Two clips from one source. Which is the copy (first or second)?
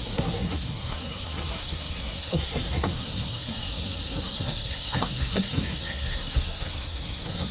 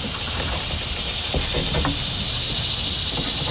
first